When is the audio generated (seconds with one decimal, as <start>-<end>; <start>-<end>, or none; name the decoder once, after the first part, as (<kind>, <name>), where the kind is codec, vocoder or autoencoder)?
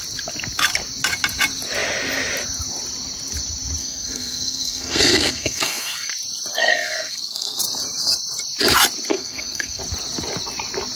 3.8-6.1 (codec, SNAC); 6.5-7.6; 9.1-9.8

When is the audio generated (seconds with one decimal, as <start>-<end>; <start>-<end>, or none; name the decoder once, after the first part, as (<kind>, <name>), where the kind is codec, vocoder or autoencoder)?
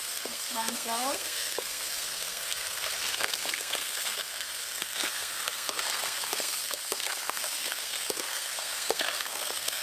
0.0-9.8 (codec, SNAC)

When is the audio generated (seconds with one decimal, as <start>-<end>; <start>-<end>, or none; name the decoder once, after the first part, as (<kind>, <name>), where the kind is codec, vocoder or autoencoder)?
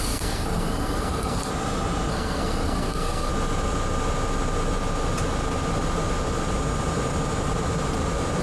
0.0-1.5 (codec, SNAC); 2.1-3.3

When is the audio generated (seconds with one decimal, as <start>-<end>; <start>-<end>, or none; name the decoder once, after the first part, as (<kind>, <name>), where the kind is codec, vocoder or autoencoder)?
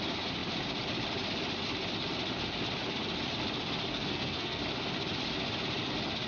3.9-4.6 (codec, SNAC)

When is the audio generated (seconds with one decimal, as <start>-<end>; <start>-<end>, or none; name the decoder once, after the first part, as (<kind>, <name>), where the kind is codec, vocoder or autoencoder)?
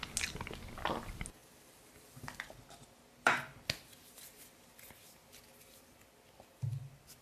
none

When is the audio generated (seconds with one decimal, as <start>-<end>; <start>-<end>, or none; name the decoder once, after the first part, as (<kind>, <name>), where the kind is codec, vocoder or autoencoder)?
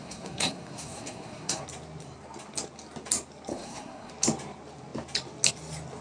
0.0-1.6 (codec, SNAC); 3.5-4.1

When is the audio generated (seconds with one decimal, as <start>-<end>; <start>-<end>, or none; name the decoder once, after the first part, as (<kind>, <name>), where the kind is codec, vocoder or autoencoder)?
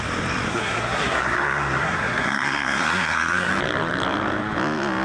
0.5-3.5 (codec, SNAC)